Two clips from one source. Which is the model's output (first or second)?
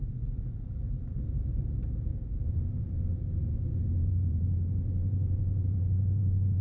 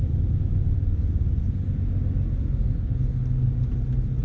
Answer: first